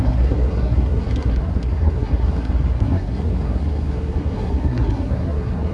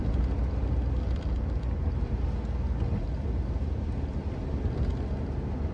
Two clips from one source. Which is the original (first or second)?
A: second